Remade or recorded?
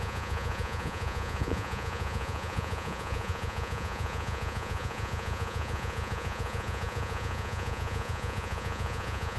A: remade